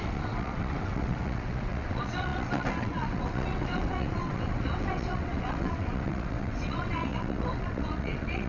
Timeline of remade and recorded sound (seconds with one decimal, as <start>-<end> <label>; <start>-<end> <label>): 0.0-8.5 remade